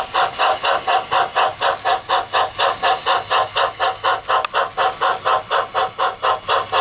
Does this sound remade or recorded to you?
recorded